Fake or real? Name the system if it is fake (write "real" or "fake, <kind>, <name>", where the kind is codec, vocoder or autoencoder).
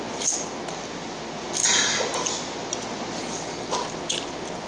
real